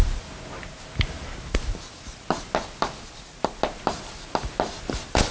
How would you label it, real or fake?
real